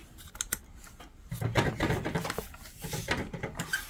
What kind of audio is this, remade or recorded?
recorded